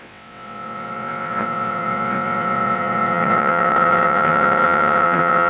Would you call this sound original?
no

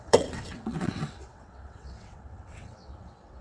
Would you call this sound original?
no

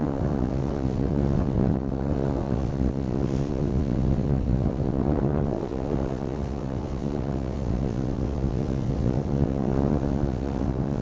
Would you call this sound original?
no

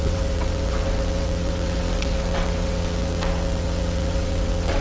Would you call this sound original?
no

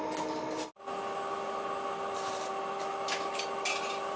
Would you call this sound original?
yes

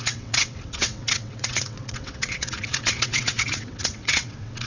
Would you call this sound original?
no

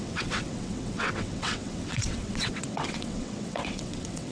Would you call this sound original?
no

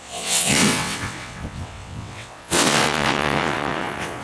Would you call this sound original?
no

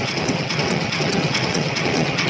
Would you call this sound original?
no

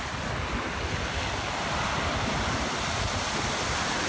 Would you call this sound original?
yes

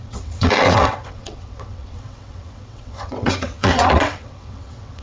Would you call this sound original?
no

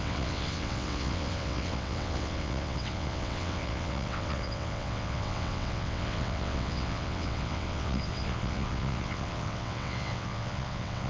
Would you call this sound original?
no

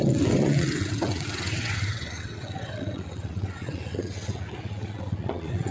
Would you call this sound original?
no